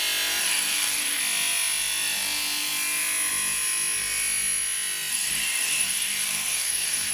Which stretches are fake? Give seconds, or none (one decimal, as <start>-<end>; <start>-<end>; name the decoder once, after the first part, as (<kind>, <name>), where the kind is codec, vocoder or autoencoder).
0.4-1.2 (codec, DAC); 5.1-7.1